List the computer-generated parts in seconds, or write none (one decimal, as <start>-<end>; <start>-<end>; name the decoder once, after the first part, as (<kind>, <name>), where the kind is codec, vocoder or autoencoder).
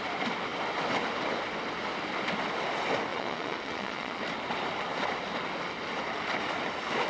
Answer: 3.1-4.2 (vocoder, Vocos)